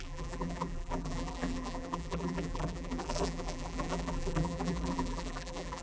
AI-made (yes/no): yes